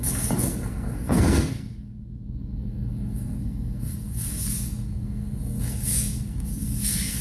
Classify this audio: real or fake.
fake